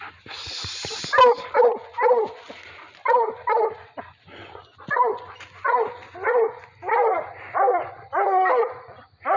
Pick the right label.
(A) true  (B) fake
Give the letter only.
A